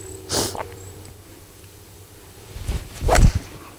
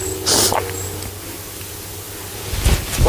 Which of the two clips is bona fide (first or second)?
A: second